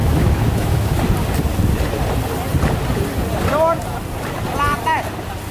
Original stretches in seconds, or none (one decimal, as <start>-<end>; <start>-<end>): 1.0-5.5